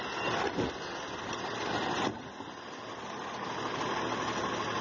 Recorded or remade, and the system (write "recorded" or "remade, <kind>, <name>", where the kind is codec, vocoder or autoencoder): recorded